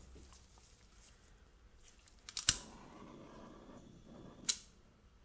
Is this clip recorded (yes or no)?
yes